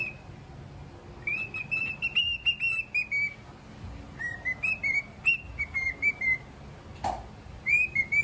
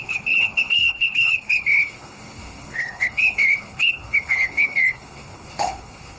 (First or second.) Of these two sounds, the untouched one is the first